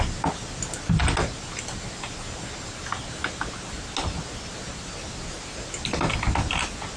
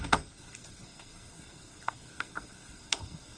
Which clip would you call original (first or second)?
first